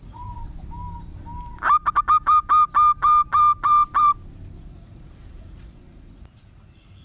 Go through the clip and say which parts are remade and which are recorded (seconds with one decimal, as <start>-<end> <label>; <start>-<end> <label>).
0.0-0.4 remade; 0.4-4.6 recorded; 4.6-7.0 remade